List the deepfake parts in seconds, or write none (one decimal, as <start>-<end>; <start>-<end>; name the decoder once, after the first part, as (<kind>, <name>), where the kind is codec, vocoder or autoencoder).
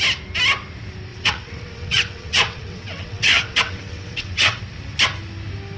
1.1-4.6 (vocoder, WaveNeXt)